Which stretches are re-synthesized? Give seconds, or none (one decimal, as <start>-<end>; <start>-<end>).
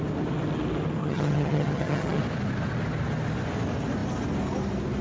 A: 1.0-2.2